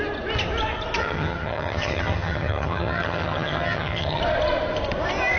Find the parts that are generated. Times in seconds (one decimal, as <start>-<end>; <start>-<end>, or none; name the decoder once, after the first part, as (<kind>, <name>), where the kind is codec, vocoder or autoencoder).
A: 1.0-4.2 (vocoder, HiFi-GAN)